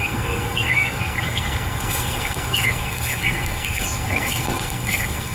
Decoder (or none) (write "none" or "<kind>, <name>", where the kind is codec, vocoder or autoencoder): codec, SNAC